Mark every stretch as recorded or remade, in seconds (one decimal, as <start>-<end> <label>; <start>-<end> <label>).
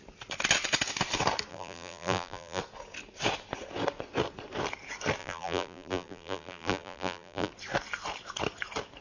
0.0-1.5 recorded; 1.5-2.6 remade; 2.6-5.2 recorded; 5.2-7.5 remade; 7.5-9.0 recorded